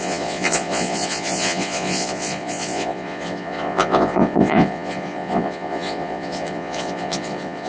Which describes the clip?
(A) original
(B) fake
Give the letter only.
B